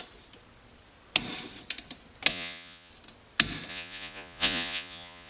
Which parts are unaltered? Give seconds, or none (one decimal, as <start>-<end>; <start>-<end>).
0.0-2.3; 2.9-3.7